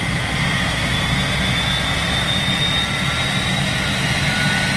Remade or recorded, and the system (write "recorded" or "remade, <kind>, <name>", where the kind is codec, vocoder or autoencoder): recorded